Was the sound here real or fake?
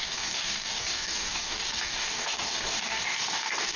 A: fake